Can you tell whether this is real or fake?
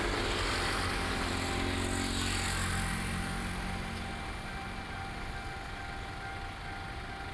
real